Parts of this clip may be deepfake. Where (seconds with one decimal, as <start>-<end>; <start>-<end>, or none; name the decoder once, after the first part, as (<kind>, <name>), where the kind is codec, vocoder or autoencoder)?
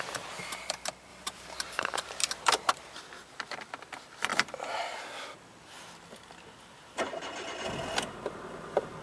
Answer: 1.1-2.7 (vocoder, BigVGAN v2); 4.3-4.8